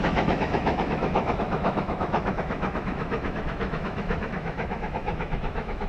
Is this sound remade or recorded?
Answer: remade